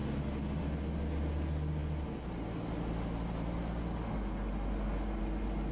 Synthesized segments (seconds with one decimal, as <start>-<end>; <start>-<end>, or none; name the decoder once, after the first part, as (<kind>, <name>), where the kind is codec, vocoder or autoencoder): none